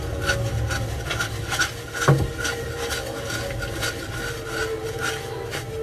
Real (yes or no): yes